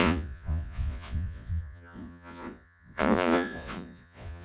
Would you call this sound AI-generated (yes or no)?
yes